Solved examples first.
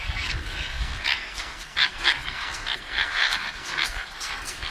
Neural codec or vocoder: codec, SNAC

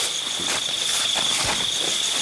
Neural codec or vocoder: none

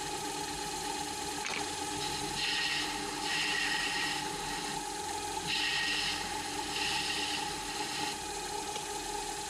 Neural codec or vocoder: none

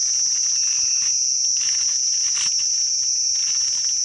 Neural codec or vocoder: none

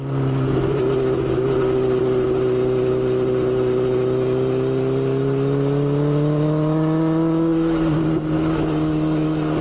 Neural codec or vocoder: none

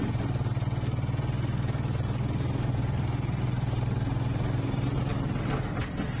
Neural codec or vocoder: none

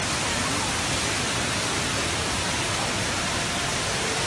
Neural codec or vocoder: none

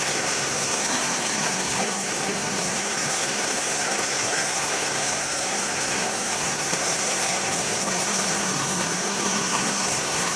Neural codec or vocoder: codec, SNAC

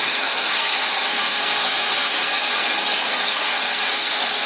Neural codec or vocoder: codec, SNAC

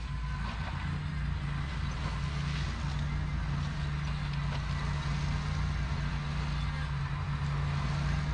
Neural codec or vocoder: none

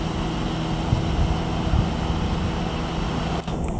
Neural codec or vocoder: none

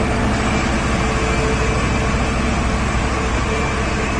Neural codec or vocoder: none